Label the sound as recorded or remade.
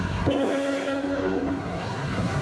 remade